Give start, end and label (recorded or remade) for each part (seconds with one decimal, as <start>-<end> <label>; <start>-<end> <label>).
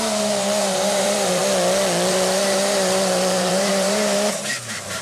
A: 0.0-1.4 remade; 1.4-2.1 recorded; 2.1-5.0 remade